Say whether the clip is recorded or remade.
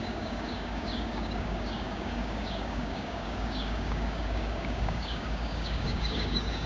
remade